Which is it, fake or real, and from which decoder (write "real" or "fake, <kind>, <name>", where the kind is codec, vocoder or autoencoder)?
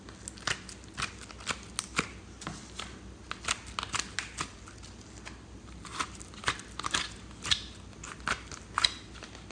real